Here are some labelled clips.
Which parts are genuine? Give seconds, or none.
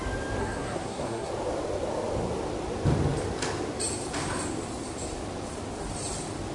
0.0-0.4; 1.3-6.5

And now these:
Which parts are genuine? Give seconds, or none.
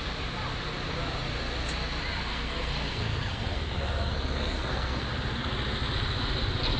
0.0-2.3; 5.1-6.8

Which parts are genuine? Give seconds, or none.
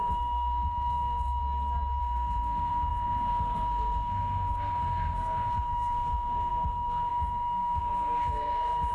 1.4-2.0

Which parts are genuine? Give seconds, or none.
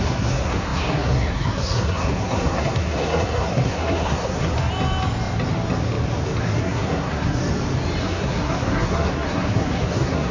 4.5-6.4; 7.4-8.0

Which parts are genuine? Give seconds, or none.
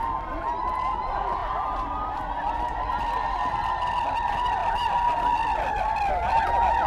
0.0-6.9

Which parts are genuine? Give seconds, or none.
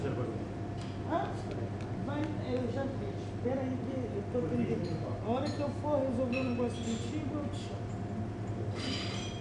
0.0-9.4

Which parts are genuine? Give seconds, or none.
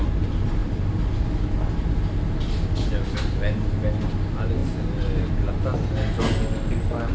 0.0-7.1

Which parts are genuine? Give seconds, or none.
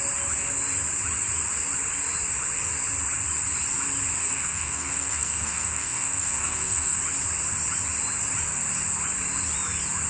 0.0-4.2; 7.0-10.1